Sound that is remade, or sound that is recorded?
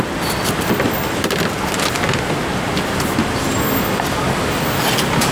recorded